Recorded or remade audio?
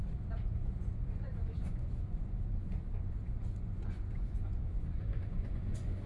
remade